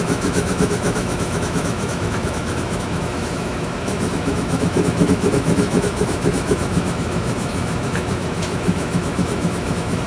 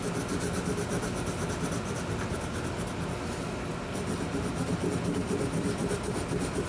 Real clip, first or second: second